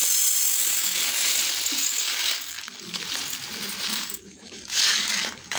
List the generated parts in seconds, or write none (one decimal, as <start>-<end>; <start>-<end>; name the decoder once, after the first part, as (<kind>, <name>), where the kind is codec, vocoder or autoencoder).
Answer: 0.5-1.3 (codec, DAC); 1.8-3.0; 3.9-5.6